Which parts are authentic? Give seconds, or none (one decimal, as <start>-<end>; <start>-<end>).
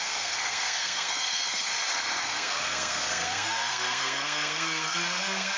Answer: 1.7-2.2